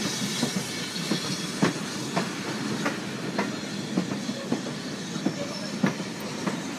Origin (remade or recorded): recorded